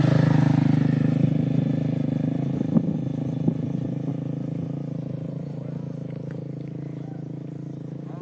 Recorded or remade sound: recorded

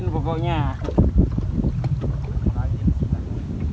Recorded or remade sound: recorded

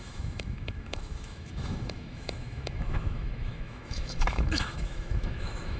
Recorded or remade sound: remade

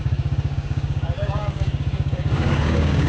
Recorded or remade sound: remade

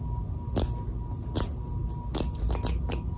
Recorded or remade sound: recorded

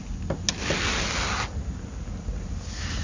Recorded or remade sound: recorded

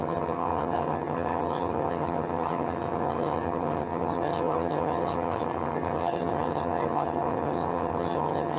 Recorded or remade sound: remade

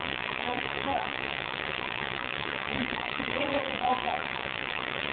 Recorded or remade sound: remade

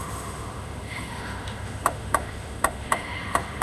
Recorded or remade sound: remade